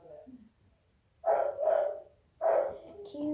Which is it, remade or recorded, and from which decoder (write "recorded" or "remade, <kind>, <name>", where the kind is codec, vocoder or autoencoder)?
recorded